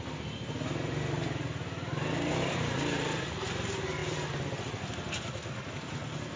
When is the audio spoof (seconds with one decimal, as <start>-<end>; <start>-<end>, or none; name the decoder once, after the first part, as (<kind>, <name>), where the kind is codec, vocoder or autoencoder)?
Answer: none